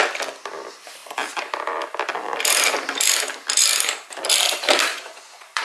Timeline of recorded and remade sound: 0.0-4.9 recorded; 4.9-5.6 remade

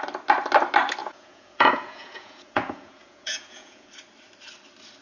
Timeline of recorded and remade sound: 0.0-1.0 recorded; 1.0-3.9 remade; 3.9-5.0 recorded

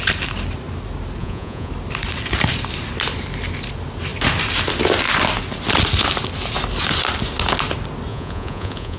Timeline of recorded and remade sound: 0.0-1.2 recorded; 1.2-1.7 remade; 1.7-8.1 recorded; 8.1-9.0 remade

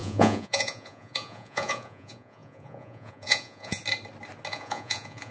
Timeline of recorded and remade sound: 0.0-3.8 remade; 3.8-4.5 recorded; 4.5-5.3 remade

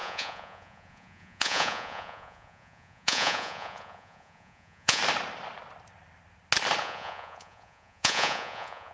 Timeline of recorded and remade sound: 0.0-5.0 remade; 5.0-6.8 recorded; 6.8-8.9 remade

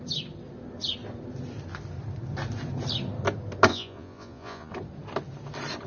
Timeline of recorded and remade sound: 0.0-3.7 recorded; 3.7-4.7 remade; 4.7-5.9 recorded